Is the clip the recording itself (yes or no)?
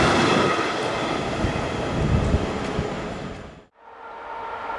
yes